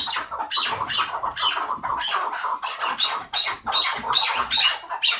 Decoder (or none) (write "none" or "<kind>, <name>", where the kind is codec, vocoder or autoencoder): none